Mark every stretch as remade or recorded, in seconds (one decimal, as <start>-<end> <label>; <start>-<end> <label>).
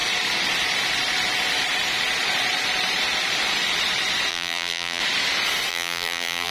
0.0-4.3 recorded; 4.3-5.0 remade; 5.0-5.7 recorded; 5.7-6.5 remade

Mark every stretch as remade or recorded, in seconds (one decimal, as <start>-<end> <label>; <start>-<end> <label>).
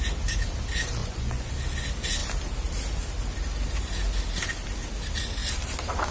0.0-1.0 recorded; 1.0-1.5 remade; 1.5-6.1 recorded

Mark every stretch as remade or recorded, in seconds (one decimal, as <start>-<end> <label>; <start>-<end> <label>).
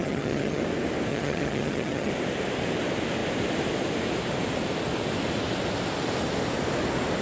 0.0-0.6 remade; 0.6-1.1 recorded; 1.1-2.1 remade; 2.1-7.2 recorded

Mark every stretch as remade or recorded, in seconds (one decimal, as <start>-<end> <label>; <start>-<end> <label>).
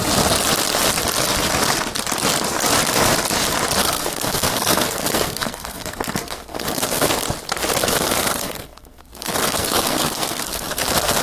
0.0-3.8 recorded; 3.8-7.1 remade; 7.1-7.8 recorded; 7.8-11.2 remade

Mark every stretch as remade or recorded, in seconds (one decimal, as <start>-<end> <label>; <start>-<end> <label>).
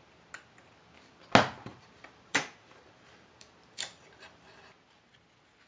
0.0-1.7 recorded; 1.7-5.1 remade; 5.1-5.7 recorded